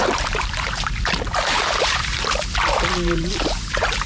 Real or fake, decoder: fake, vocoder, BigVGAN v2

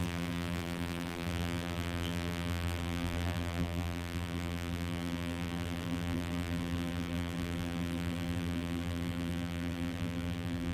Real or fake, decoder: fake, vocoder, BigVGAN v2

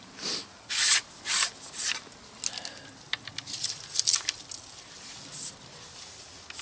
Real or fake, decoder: real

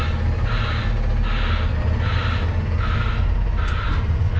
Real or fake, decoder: real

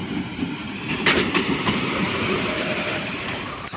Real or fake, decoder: fake, vocoder, BigVGAN v2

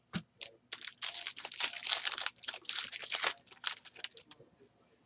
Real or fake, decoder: real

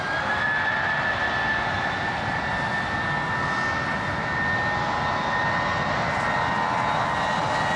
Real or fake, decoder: real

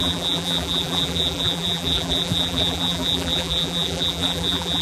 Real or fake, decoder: fake, vocoder, BigVGAN v2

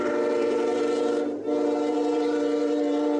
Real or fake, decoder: fake, vocoder, BigVGAN v2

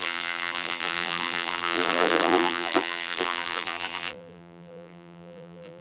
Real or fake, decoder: fake, vocoder, BigVGAN v2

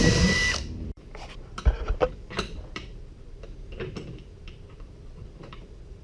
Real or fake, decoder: fake, vocoder, BigVGAN v2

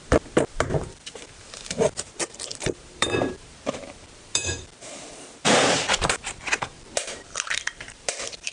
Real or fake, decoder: fake, vocoder, BigVGAN v2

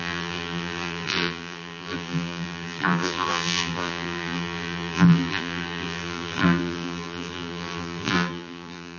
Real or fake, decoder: fake, vocoder, BigVGAN v2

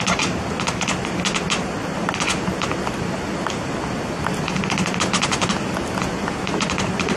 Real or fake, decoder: real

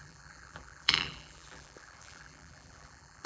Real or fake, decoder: fake, vocoder, BigVGAN v2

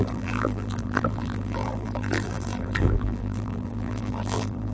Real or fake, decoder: fake, vocoder, BigVGAN v2